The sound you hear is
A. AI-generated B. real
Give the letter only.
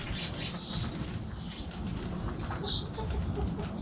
B